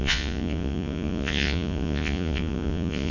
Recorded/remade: remade